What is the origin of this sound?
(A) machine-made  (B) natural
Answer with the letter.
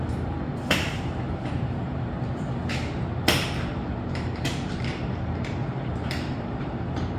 A